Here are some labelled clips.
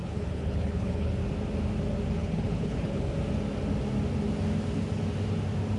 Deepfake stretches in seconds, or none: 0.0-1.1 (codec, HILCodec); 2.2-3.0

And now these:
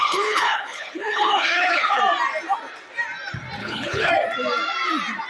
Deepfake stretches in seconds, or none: 0.0-2.0 (codec, HILCodec); 3.6-4.1

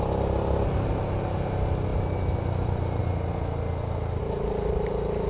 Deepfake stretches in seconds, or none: none

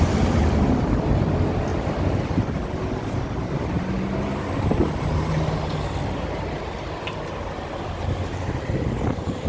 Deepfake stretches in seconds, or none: none

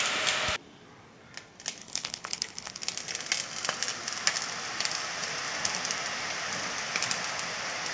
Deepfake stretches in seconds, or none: 1.8-2.7 (codec, HILCodec)

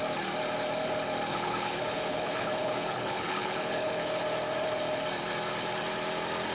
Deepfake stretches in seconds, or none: 1.3-4.2 (codec, HILCodec)

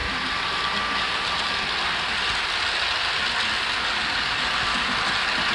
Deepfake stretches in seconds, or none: none

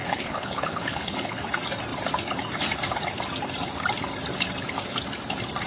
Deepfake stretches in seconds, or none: 0.0-1.4 (codec, HILCodec)